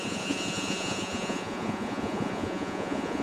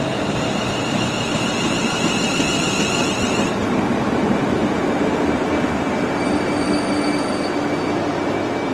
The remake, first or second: first